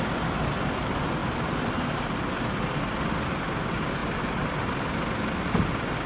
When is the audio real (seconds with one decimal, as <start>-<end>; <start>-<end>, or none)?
0.0-6.1